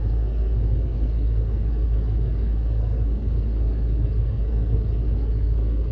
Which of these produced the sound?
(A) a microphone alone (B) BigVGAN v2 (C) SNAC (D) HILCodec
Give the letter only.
C